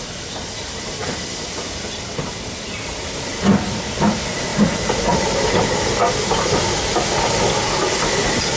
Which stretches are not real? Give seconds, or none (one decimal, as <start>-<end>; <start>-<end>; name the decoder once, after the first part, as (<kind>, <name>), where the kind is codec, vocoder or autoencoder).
4.5-5.5 (vocoder, BigVGAN v2)